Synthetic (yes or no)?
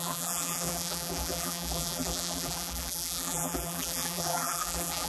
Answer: yes